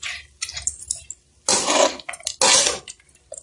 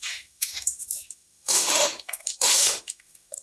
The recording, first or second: first